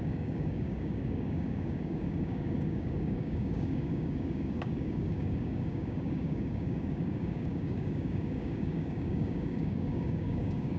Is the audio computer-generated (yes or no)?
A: yes